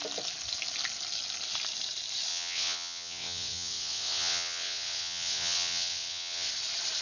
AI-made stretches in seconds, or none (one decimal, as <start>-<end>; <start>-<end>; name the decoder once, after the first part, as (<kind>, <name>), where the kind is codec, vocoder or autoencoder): 2.3-6.5 (vocoder, WaveNeXt)

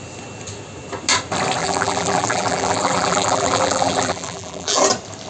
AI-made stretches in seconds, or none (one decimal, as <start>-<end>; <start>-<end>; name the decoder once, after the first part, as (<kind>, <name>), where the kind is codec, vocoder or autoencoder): 1.6-4.8 (vocoder, BigVGAN v2)

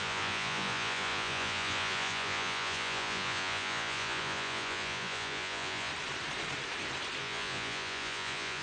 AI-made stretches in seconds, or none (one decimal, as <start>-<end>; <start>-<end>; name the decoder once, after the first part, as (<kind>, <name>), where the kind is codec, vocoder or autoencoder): 0.0-5.9 (vocoder, Vocos); 7.2-8.6

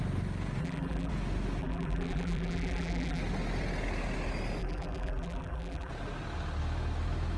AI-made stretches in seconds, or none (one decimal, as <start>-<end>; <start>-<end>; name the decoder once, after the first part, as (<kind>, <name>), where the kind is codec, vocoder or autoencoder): 0.6-1.1 (vocoder, BigVGAN v2); 1.6-3.2; 4.6-5.9

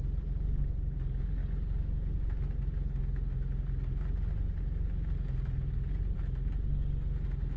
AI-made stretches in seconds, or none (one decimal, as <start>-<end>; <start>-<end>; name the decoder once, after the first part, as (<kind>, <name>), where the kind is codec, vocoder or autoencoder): none

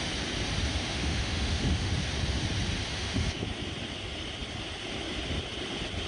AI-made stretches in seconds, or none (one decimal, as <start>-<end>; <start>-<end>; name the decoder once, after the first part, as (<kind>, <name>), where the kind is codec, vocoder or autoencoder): 0.7-1.9 (autoencoder, DAC-VAE); 2.9-3.4

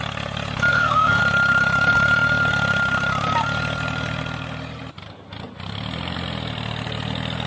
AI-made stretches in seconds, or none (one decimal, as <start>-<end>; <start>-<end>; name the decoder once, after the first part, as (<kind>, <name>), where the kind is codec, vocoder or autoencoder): 0.7-1.2 (codec, SNAC)

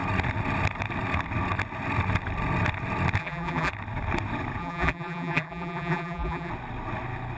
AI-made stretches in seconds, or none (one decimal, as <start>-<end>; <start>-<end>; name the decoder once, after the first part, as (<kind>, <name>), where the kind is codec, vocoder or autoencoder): 3.2-3.7 (vocoder, BigVGAN v2); 4.6-6.5